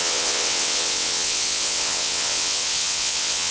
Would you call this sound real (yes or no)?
no